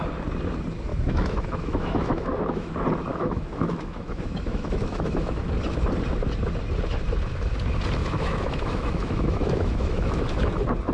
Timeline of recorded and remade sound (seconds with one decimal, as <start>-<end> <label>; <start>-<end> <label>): 0.0-0.9 recorded; 0.9-2.7 remade; 2.7-3.1 recorded; 3.1-5.5 remade; 5.5-8.0 recorded; 8.0-10.5 remade; 10.5-10.9 recorded